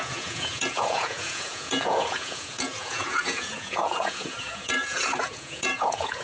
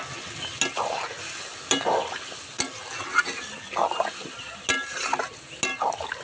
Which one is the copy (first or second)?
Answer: first